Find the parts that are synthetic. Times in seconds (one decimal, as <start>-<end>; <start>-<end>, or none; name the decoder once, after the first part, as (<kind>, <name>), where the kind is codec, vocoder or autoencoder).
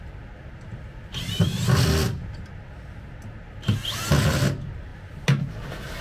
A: 0.7-2.5 (vocoder, BigVGAN v2)